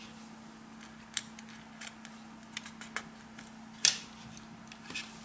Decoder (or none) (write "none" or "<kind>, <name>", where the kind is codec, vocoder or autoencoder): none